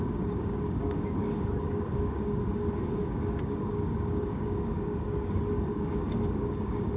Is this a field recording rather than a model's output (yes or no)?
no